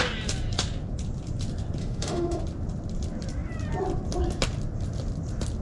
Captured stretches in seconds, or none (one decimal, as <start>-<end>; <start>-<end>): 0.0-1.8; 2.4-5.6